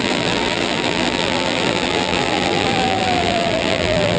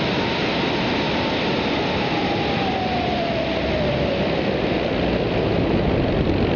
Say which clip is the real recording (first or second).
second